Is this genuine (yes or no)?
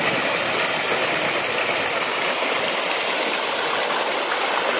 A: yes